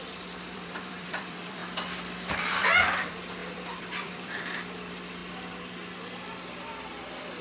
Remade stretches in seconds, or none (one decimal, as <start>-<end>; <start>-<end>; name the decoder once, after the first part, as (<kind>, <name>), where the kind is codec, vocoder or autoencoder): 0.0-1.6 (vocoder, BigVGAN v2); 2.3-5.2